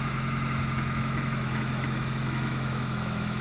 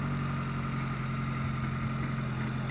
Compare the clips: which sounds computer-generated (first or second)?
first